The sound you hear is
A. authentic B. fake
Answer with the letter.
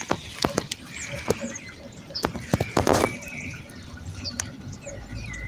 A